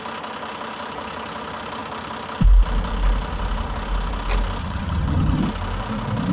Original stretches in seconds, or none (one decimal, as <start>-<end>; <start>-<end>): 0.0-4.6; 5.4-6.3